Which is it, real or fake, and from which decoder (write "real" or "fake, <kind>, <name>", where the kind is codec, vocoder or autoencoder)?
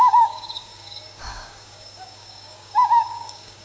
fake, codec, DAC